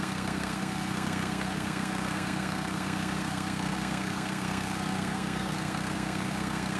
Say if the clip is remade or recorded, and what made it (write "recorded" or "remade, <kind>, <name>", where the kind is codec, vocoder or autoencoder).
remade, codec, SNAC